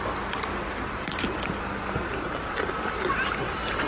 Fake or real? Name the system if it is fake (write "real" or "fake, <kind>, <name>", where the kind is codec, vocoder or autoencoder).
real